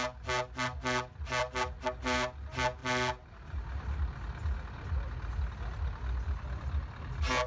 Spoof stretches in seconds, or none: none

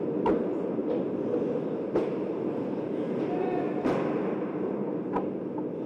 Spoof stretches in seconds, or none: none

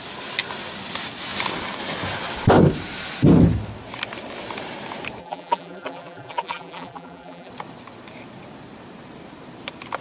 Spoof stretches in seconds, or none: 5.2-7.5

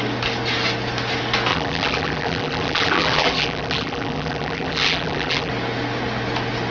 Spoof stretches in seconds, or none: 1.5-5.5

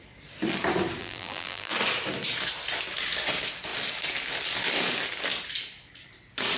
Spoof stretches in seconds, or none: 1.0-1.7